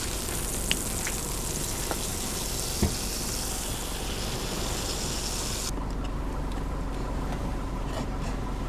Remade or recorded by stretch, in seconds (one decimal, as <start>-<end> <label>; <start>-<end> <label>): 0.0-7.5 recorded; 7.5-8.7 remade